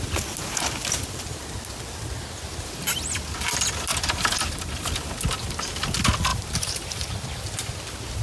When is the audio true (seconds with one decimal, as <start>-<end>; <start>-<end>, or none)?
0.0-3.9; 4.9-6.3; 7.1-8.2